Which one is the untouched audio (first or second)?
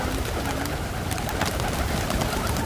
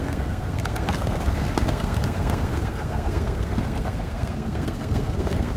first